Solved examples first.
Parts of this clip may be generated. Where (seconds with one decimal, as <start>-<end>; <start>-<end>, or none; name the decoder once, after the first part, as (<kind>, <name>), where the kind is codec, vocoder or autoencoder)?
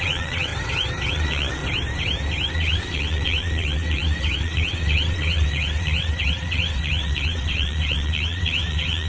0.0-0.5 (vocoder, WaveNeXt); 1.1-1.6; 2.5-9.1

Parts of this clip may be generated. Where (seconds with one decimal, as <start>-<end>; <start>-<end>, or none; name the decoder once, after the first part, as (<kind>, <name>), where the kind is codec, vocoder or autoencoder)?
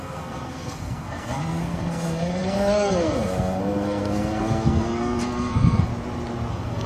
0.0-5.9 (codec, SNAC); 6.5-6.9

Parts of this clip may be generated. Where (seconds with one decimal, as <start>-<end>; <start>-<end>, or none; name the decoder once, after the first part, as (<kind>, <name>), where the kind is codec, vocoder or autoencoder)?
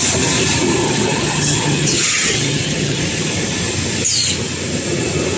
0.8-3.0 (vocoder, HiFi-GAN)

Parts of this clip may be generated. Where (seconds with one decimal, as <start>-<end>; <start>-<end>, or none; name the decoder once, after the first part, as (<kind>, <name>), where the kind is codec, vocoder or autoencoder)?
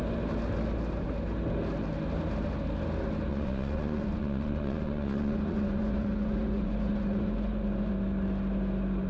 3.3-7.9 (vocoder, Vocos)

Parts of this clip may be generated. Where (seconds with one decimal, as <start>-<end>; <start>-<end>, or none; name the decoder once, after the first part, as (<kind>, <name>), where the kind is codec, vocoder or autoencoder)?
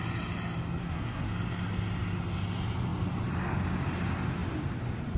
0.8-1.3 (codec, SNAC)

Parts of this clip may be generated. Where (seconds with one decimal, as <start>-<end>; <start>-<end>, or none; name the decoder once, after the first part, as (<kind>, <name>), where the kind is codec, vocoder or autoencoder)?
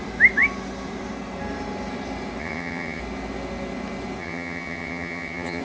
2.4-3.0 (vocoder, HiFi-GAN); 4.2-5.6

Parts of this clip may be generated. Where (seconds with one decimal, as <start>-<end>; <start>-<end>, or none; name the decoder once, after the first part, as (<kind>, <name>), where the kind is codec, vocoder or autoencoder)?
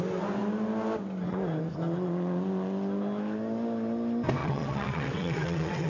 4.4-5.9 (vocoder, WaveNeXt)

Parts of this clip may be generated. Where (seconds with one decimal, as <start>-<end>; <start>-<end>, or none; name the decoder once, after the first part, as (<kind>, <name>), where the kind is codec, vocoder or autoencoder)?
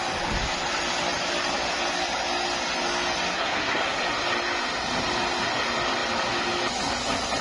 3.3-4.0 (codec, SNAC)